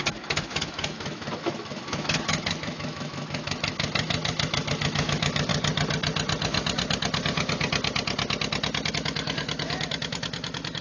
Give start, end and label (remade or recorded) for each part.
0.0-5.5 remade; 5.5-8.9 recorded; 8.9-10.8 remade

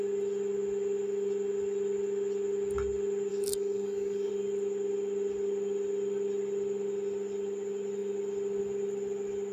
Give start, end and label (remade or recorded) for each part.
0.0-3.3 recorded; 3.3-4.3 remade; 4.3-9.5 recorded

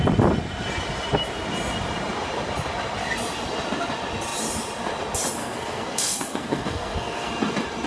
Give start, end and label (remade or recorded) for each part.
0.0-5.4 recorded; 5.4-7.3 remade; 7.3-7.9 recorded

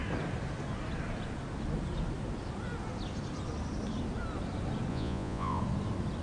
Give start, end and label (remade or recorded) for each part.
0.0-4.9 recorded; 4.9-5.6 remade; 5.6-6.2 recorded